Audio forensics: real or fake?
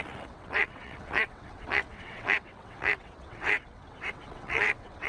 fake